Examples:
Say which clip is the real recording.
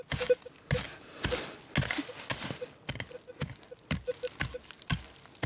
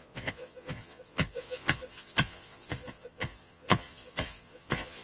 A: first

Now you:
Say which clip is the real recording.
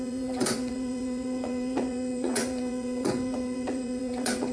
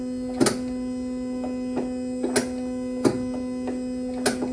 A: second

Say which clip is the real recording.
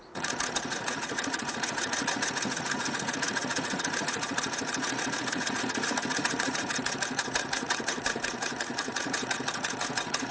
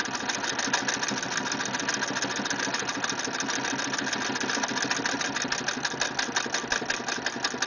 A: second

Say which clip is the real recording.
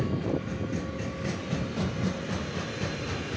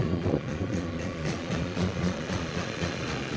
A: first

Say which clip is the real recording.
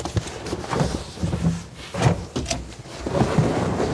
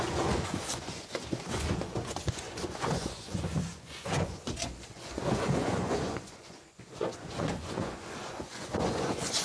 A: first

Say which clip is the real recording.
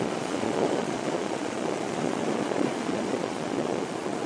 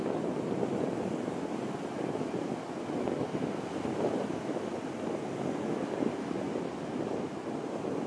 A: second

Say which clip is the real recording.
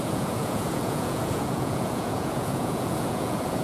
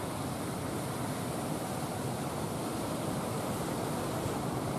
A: second